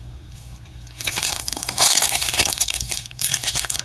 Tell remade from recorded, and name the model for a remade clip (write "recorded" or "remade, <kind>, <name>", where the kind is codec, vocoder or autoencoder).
remade, codec, SNAC